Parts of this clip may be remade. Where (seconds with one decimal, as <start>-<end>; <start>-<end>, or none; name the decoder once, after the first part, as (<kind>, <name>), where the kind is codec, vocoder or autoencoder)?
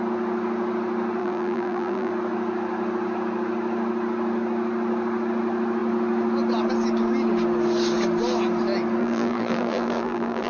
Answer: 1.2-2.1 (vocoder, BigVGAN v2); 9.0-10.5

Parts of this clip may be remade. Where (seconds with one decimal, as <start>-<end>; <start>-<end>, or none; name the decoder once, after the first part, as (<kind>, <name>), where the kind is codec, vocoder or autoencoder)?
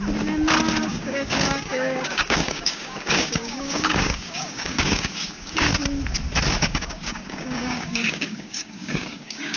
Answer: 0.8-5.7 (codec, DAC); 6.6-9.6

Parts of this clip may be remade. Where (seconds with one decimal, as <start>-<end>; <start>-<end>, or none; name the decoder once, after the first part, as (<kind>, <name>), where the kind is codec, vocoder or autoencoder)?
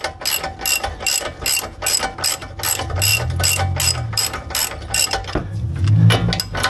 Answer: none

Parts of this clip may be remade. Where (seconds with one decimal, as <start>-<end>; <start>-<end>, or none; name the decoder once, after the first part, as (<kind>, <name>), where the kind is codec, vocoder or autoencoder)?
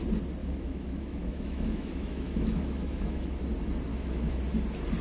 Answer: 0.4-3.4 (autoencoder, DAC-VAE); 3.9-4.4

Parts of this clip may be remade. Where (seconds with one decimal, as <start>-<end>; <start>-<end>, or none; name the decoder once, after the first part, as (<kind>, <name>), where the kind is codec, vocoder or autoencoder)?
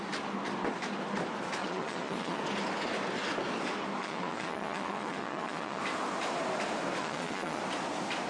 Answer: 1.6-2.4 (vocoder, Vocos); 4.0-5.8; 7.0-7.6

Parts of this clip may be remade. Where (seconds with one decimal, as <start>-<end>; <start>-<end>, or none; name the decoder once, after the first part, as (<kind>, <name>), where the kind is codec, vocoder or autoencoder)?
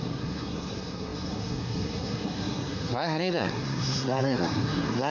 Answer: 0.0-5.1 (codec, SNAC)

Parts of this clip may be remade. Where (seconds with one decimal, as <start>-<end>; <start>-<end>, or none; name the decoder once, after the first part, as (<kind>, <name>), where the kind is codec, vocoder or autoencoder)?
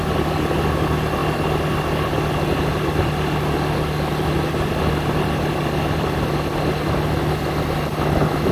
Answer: none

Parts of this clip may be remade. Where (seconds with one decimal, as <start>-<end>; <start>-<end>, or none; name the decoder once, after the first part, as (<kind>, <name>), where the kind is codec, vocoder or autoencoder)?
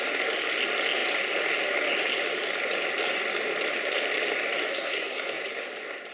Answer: 4.7-5.4 (codec, SNAC)